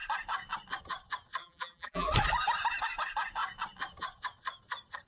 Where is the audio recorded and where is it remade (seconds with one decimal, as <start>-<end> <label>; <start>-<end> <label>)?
0.0-1.4 recorded; 1.4-2.1 remade; 2.1-5.1 recorded